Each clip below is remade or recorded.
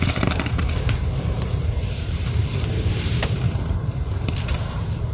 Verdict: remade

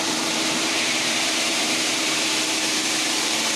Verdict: remade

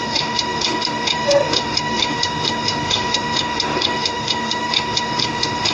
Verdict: remade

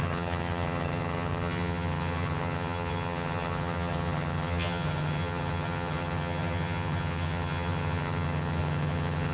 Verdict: remade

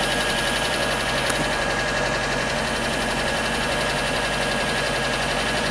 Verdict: remade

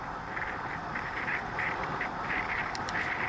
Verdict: recorded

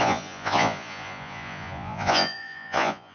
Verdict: remade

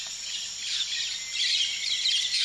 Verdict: recorded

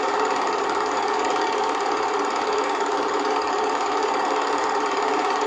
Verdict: remade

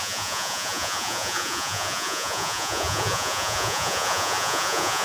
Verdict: remade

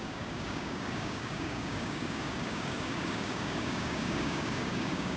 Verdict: remade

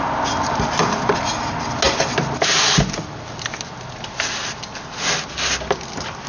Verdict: recorded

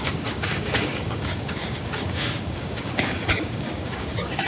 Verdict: remade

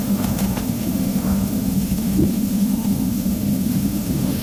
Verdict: remade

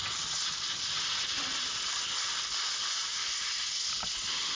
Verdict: recorded